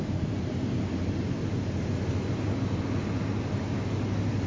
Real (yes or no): yes